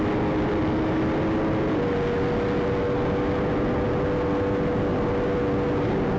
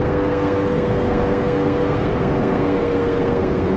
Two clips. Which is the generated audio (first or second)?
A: second